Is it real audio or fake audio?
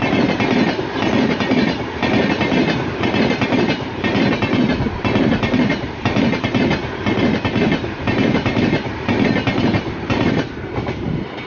fake